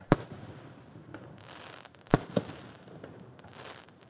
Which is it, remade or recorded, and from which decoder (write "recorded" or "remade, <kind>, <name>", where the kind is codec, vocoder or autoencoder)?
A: remade, vocoder, BigVGAN v2